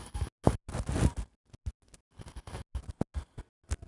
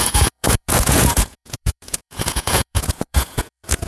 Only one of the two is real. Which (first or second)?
first